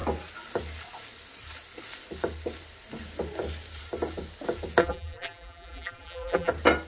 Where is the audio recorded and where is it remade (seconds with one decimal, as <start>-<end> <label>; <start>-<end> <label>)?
0.0-4.8 recorded; 4.8-6.5 remade; 6.5-6.9 recorded